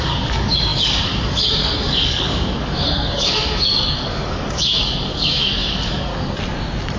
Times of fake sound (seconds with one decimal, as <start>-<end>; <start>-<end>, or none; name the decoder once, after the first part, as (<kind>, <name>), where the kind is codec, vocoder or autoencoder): 0.0-6.1 (codec, DAC)